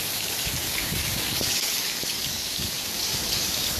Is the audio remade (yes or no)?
yes